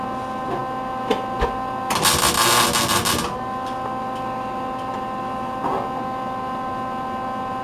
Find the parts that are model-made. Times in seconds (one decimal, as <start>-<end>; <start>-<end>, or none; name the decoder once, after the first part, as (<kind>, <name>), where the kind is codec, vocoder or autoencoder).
none